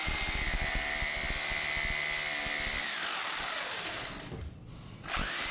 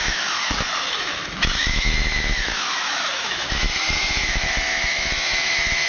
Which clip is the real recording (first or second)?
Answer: first